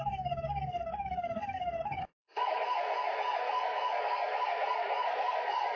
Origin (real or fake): fake